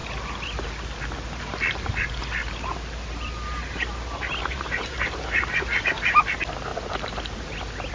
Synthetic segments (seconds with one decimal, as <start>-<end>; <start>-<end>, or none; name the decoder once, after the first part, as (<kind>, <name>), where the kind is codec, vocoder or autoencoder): 4.4-6.2 (vocoder, BigVGAN v2)